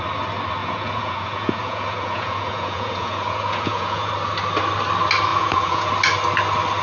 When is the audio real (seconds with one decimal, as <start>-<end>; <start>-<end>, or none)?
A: 0.0-0.6; 4.1-5.3; 5.9-6.8